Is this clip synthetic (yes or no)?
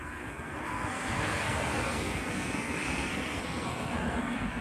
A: yes